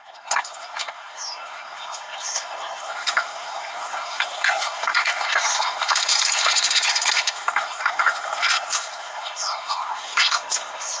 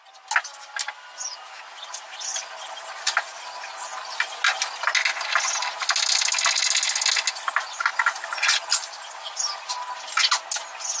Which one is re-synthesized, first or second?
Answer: first